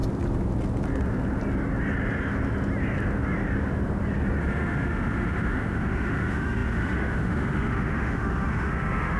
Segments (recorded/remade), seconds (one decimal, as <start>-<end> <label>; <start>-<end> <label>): 0.0-4.4 recorded; 4.4-9.2 remade